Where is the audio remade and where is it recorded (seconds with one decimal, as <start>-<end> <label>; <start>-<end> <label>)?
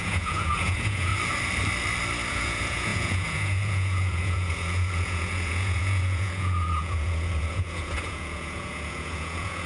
0.0-1.1 remade; 1.1-2.3 recorded; 2.3-9.7 remade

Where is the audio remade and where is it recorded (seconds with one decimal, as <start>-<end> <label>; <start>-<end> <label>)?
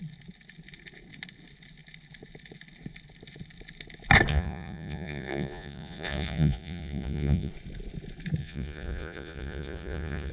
0.0-4.3 recorded; 4.3-7.5 remade; 7.5-8.4 recorded; 8.4-10.3 remade